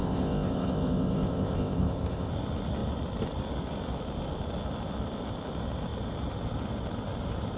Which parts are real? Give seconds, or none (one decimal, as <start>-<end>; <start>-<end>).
2.3-7.6